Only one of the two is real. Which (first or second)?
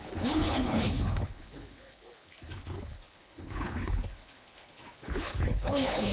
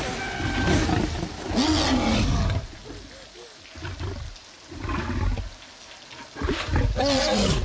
second